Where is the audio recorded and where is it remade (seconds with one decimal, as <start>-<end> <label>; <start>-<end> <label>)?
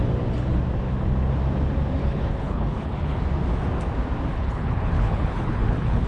0.0-2.0 recorded; 2.0-3.2 remade; 3.2-4.3 recorded; 4.3-6.1 remade